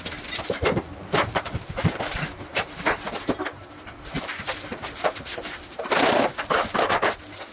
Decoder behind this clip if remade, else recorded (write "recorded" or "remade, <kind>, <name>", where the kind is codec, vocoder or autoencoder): remade, vocoder, BigVGAN v2